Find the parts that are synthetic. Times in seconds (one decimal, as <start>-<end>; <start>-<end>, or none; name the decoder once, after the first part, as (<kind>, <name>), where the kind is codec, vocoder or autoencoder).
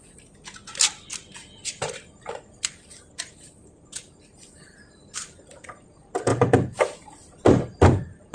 1.6-5.8 (vocoder, BigVGAN v2)